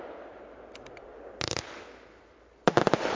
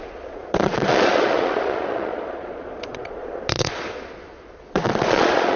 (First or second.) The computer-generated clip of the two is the second